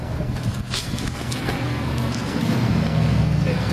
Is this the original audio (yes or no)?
no